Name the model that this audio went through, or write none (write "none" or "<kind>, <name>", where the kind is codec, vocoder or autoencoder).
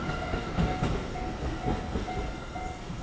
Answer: codec, SNAC